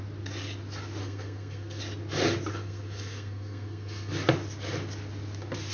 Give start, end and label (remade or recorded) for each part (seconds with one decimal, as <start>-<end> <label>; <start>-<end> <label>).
0.0-1.0 recorded; 1.0-1.8 remade; 1.8-2.5 recorded; 2.5-4.1 remade; 4.1-5.7 recorded